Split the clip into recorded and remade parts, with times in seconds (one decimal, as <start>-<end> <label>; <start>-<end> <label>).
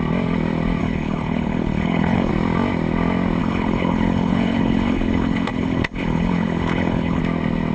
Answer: 0.0-0.8 recorded; 0.8-2.3 remade; 2.3-3.4 recorded; 3.4-7.2 remade; 7.2-7.7 recorded